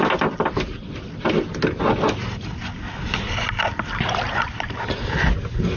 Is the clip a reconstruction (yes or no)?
no